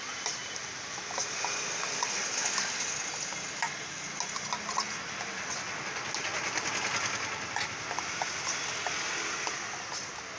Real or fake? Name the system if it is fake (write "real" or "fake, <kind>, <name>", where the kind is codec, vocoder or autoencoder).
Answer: real